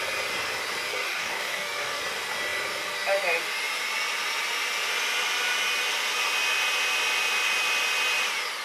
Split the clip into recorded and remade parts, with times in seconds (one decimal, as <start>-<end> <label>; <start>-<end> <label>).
0.0-0.9 recorded; 0.9-2.0 remade; 2.0-8.6 recorded